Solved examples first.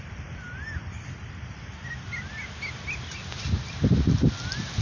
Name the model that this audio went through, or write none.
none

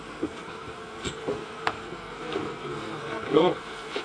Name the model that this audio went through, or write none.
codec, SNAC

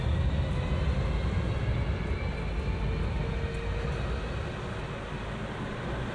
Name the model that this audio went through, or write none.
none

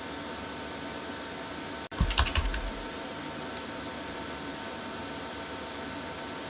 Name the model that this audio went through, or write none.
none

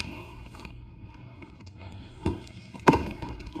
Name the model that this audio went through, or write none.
codec, SNAC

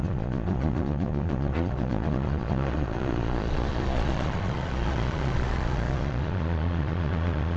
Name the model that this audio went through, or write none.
vocoder, Vocos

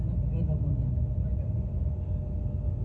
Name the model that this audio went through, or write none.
none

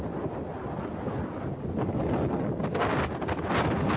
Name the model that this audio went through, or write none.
none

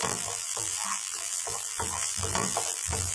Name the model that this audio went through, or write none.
vocoder, BigVGAN v2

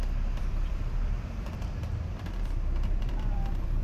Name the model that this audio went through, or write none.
vocoder, BigVGAN v2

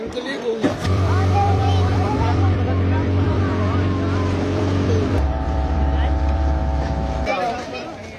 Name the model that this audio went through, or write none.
vocoder, BigVGAN v2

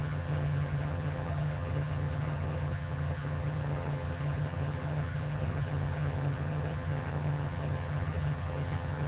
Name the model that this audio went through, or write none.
vocoder, HiFi-GAN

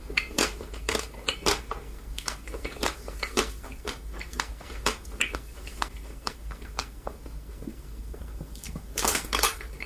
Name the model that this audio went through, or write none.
codec, SNAC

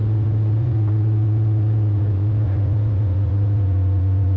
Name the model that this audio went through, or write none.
vocoder, Vocos